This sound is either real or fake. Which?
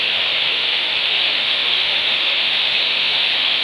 fake